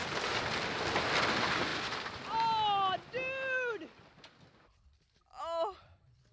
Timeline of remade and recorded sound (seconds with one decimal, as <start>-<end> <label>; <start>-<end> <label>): 0.0-6.3 recorded